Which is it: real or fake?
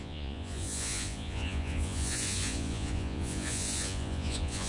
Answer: fake